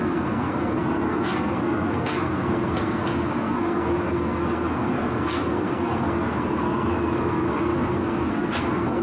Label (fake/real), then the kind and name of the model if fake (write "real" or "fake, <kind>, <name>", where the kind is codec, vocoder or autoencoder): fake, codec, SNAC